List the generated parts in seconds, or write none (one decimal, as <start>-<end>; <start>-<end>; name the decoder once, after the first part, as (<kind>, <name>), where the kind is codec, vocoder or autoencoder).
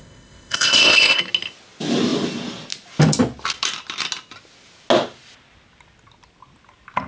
0.0-1.2 (codec, ZipCodec)